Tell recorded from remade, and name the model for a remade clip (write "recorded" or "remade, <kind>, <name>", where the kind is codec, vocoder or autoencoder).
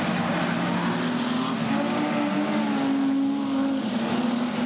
recorded